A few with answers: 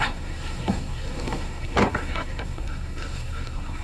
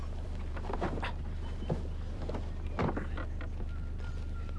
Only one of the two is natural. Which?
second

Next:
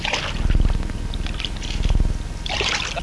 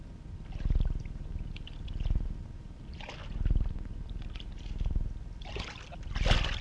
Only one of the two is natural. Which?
first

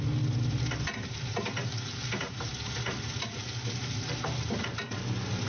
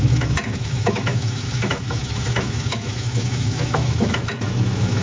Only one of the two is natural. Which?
first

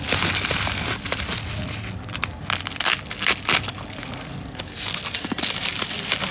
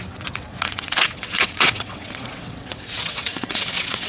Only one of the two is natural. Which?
first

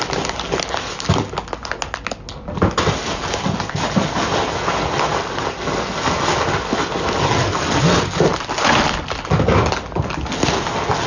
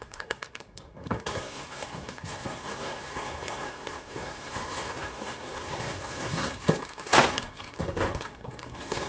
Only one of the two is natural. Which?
first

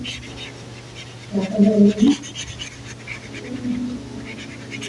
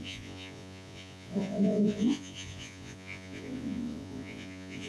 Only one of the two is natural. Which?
first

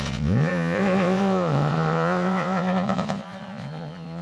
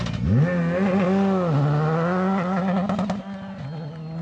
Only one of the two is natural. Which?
second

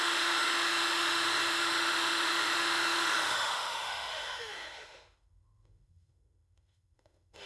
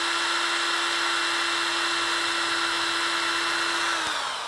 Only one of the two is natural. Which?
second